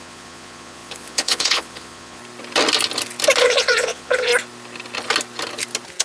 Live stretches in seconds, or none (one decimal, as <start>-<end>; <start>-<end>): 2.2-3.4; 4.3-6.0